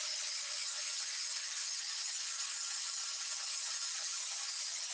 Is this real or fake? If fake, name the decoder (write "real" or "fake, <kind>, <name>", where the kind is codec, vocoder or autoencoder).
fake, vocoder, HiFi-GAN